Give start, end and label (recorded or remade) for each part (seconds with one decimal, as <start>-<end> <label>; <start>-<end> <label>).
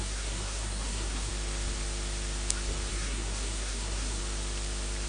0.0-1.3 remade; 1.3-2.9 recorded; 2.9-4.2 remade; 4.2-5.1 recorded